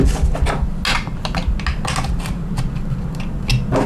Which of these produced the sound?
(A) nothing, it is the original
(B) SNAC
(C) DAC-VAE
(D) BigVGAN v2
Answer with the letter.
A